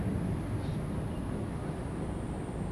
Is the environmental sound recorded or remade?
recorded